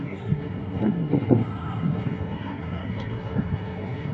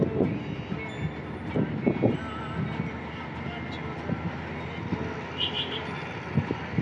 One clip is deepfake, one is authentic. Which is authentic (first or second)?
second